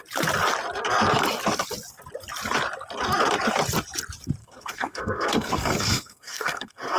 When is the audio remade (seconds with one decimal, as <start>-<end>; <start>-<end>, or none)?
4.4-7.0